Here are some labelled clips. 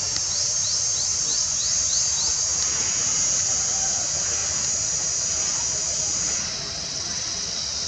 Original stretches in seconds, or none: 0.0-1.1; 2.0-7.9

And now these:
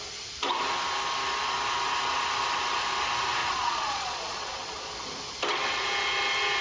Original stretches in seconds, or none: 0.0-3.4; 4.9-6.6

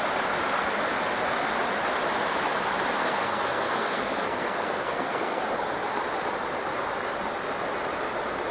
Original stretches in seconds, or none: 0.0-3.0; 5.4-8.5

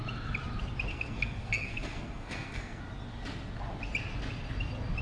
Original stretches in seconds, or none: 0.0-0.9; 2.8-5.0

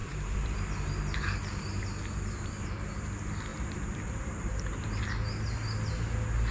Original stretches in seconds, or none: 0.6-3.5; 5.0-6.5

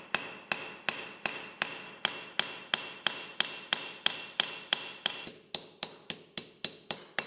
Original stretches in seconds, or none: 0.0-7.3